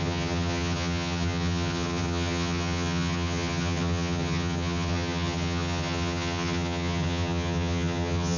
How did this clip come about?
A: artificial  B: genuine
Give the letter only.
A